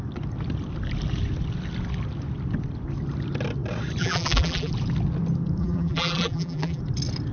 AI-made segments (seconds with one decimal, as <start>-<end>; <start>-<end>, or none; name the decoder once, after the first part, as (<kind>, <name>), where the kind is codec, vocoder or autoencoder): 4.0-4.7 (vocoder, BigVGAN v2); 5.6-6.8